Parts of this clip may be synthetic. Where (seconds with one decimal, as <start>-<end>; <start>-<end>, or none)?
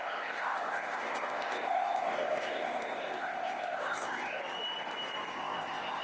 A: 0.0-4.4; 5.3-6.0